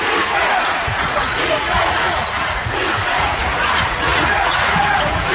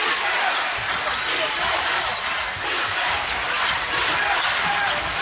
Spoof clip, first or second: first